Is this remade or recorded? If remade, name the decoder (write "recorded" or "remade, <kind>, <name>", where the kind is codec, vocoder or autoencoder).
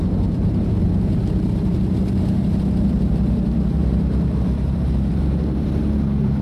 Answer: remade, vocoder, BigVGAN v2